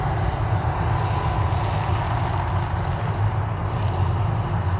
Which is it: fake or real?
real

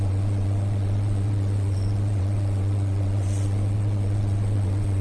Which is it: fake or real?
fake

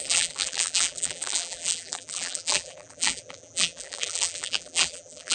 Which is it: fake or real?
fake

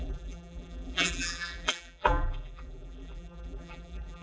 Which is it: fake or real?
fake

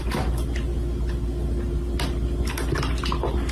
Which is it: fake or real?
real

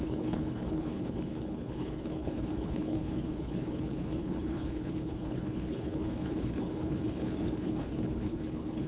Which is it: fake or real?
fake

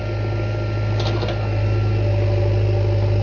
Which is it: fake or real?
real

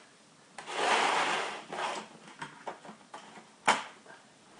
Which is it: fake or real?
real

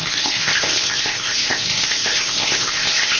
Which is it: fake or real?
fake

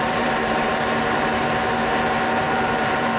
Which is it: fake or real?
fake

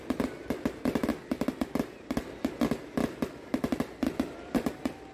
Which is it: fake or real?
real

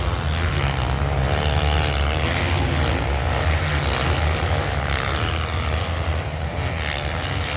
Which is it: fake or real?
real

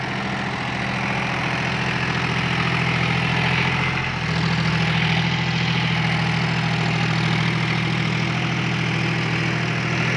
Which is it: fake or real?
real